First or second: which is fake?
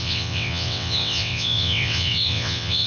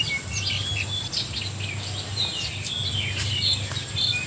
first